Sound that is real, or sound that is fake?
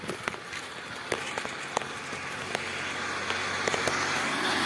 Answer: real